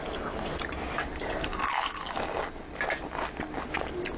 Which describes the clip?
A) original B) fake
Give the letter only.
A